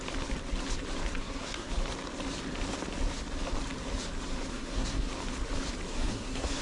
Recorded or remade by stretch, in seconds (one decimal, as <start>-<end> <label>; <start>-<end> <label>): 0.0-1.2 recorded; 1.2-1.7 remade; 1.7-4.5 recorded; 4.5-5.1 remade; 5.1-5.9 recorded; 5.9-6.6 remade